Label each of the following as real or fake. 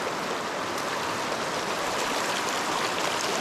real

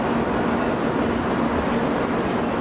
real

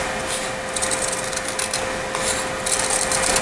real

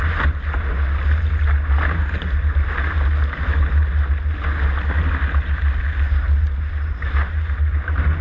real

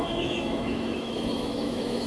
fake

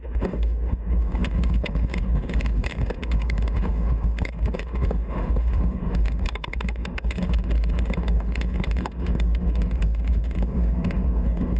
fake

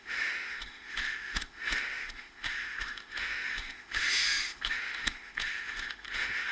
fake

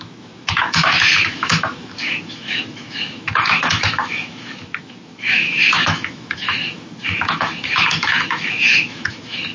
fake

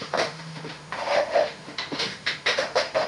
fake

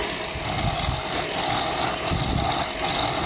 real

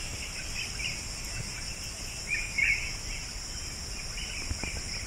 real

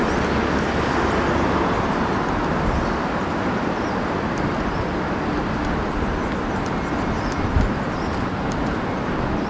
real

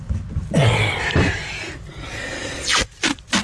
real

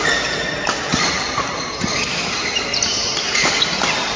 real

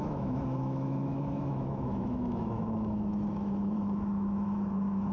fake